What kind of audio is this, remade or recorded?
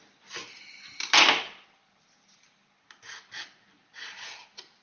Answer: recorded